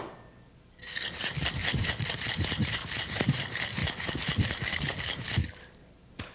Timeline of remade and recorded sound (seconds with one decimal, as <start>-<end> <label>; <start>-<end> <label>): 0.0-1.6 recorded; 1.6-5.3 remade; 5.3-6.3 recorded